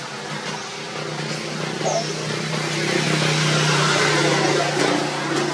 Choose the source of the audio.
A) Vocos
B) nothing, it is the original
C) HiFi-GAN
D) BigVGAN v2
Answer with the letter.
B